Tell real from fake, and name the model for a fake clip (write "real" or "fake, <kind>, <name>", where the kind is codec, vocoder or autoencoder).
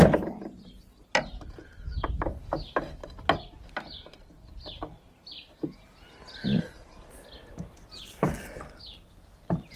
real